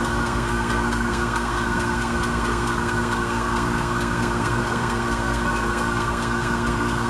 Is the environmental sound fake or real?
fake